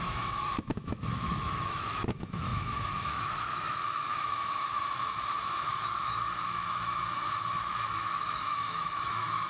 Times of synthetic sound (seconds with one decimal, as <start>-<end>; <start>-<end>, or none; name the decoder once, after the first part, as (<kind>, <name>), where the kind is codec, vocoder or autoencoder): 0.0-9.5 (autoencoder, DAC-VAE)